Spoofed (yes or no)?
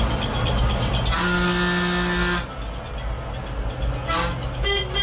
no